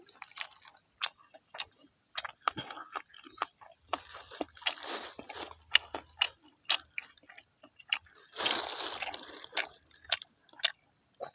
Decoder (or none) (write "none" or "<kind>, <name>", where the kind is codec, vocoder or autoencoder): none